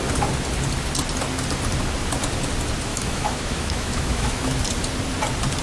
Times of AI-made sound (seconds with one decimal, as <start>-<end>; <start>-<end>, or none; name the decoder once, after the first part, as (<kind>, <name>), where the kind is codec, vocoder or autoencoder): 2.9-4.6 (autoencoder, DAC-VAE)